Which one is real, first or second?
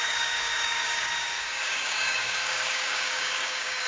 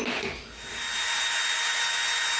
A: second